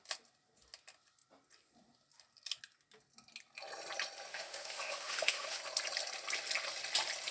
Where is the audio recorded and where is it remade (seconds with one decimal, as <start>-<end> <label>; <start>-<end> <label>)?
0.0-4.3 recorded; 4.3-5.6 remade; 5.6-7.3 recorded

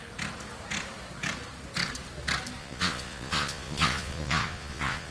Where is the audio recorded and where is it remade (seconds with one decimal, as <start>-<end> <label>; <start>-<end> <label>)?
0.0-2.6 recorded; 2.6-5.1 remade

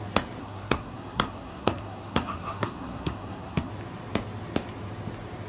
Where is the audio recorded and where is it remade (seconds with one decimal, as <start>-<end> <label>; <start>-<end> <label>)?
0.0-0.4 recorded; 0.4-3.7 remade; 3.7-5.5 recorded